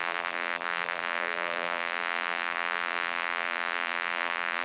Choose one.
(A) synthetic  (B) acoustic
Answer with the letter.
A